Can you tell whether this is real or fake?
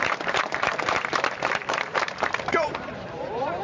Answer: fake